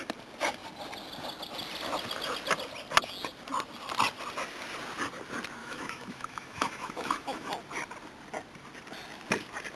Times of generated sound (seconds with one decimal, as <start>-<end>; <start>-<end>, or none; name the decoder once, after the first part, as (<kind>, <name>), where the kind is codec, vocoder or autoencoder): 5.6-7.5 (autoencoder, DAC-VAE)